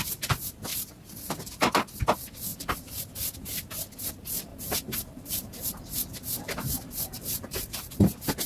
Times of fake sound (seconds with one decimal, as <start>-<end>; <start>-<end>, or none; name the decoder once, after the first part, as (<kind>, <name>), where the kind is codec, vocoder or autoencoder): 2.5-3.0 (vocoder, BigVGAN v2); 4.5-7.9